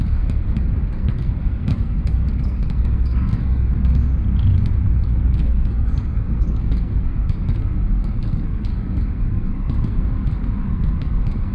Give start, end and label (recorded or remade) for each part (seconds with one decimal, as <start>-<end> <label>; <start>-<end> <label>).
0.0-4.1 remade; 4.1-4.9 recorded; 4.9-11.5 remade